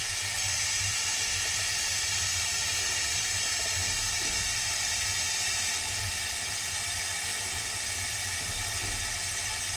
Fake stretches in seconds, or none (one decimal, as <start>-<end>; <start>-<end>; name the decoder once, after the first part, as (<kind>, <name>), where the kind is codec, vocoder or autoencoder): none